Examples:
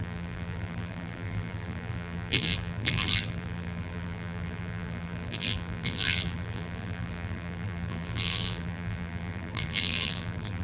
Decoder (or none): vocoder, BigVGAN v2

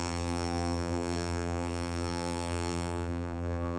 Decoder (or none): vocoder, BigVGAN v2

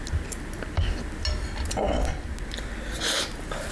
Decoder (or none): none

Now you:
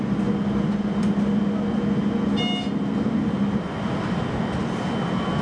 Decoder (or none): none